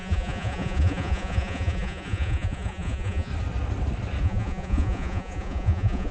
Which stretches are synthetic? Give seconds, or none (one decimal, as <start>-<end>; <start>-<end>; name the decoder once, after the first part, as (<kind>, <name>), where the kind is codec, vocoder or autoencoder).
0.0-3.3 (vocoder, Vocos); 4.2-6.1

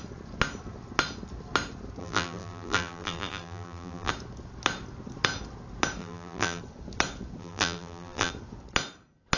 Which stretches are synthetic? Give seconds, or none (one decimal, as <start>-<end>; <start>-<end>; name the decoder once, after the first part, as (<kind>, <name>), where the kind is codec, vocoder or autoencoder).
2.0-4.1 (vocoder, BigVGAN v2); 6.0-6.6; 7.4-8.3

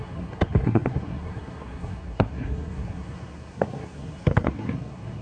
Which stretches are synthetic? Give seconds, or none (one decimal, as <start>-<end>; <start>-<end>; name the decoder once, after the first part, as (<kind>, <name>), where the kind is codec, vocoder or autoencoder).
0.0-5.2 (codec, SNAC)

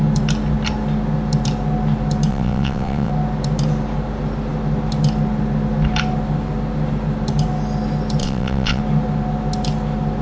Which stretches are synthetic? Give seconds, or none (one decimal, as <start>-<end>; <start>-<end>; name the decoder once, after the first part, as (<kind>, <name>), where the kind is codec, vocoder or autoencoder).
2.3-3.1 (vocoder, WaveNeXt); 8.2-8.8

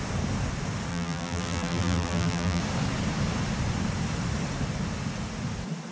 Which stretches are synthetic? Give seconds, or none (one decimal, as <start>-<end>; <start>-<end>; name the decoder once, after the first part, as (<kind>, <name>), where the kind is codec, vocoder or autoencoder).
0.9-2.6 (vocoder, BigVGAN v2)

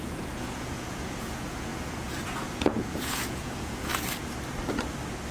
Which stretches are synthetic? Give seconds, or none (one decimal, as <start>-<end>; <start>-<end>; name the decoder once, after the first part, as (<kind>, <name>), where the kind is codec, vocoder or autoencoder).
0.0-3.9 (vocoder, Vocos)

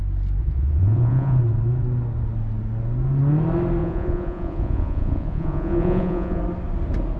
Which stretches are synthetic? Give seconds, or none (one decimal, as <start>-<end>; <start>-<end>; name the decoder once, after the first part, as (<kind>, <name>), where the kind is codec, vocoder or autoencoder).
0.4-1.4 (vocoder, Vocos); 3.8-6.4